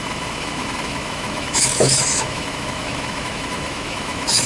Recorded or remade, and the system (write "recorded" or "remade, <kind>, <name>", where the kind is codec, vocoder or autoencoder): remade, autoencoder, DAC-VAE